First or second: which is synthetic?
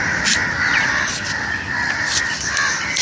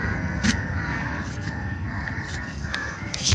second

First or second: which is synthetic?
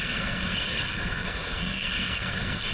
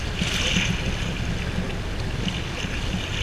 first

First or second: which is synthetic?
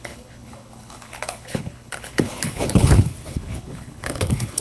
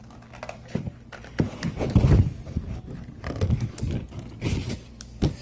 first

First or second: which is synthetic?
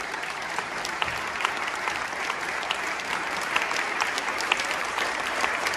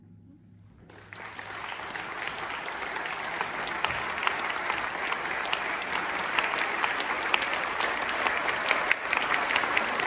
first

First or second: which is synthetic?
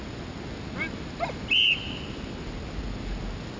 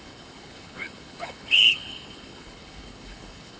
second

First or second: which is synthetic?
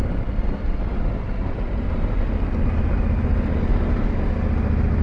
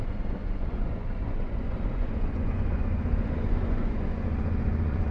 second